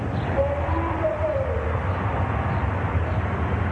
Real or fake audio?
fake